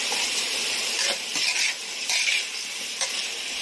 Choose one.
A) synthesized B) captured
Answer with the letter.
B